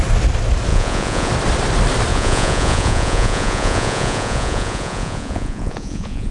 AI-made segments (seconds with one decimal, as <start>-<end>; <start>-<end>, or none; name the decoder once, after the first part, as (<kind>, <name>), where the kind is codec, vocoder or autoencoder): 0.7-1.3 (vocoder, Vocos); 2.1-6.3